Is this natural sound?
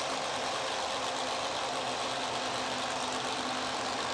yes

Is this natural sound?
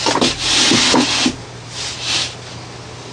yes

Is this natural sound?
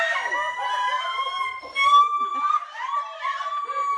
yes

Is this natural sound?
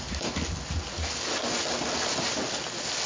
yes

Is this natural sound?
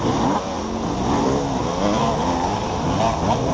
yes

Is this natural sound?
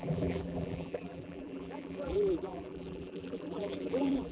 no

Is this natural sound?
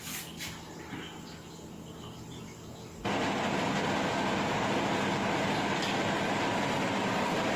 yes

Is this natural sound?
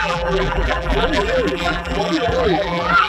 no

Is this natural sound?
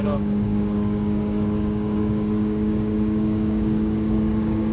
no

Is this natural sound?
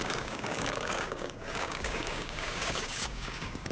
no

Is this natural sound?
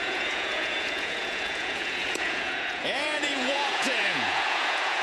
no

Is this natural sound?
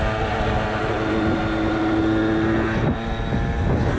yes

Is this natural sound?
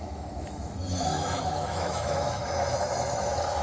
no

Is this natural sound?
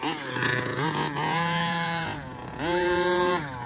no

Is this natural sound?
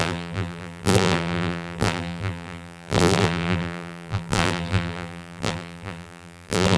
no